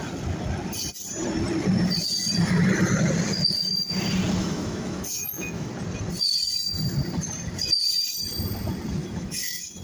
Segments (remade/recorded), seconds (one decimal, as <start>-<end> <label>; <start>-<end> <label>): 0.0-4.4 recorded; 4.4-5.7 remade; 5.7-9.0 recorded; 9.0-9.8 remade